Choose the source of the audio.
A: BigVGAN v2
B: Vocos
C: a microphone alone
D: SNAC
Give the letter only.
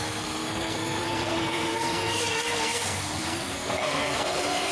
D